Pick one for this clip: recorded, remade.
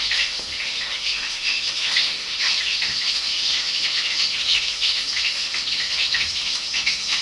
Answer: remade